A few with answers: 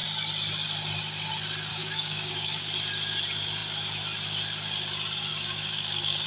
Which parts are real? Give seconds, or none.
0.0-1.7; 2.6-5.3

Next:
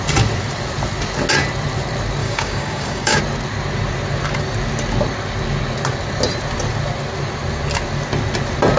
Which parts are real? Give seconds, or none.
0.0-2.2; 3.2-8.8

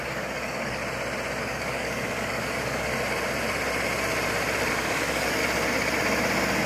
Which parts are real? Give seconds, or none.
0.8-1.4; 2.9-4.7; 5.4-6.7

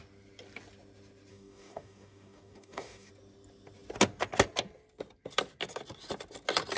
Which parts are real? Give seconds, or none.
0.0-1.3; 3.1-6.8

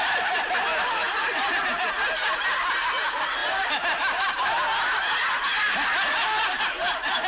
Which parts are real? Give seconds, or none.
0.0-7.3

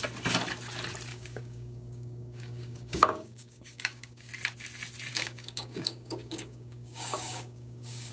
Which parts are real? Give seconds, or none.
0.0-1.1; 4.3-5.1

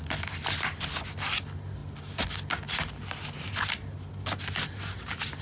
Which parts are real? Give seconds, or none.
0.0-5.4